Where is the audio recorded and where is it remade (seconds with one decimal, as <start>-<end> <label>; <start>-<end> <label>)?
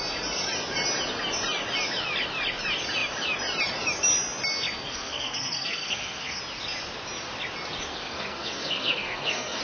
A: 0.0-4.9 recorded; 4.9-6.4 remade; 6.4-7.9 recorded; 7.9-9.6 remade